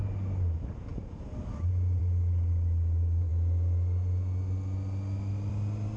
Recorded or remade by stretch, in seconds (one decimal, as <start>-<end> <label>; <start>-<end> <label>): 0.0-6.0 recorded